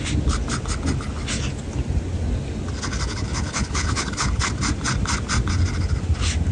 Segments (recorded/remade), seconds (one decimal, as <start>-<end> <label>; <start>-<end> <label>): 0.0-2.9 recorded; 2.9-4.5 remade; 4.5-6.5 recorded